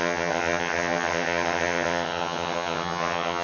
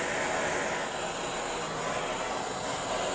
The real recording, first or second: second